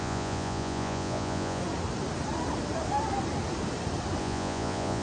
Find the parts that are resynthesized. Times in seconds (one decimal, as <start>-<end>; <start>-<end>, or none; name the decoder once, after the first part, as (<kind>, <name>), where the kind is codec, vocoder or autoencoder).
0.0-1.6 (vocoder, Vocos); 4.2-5.0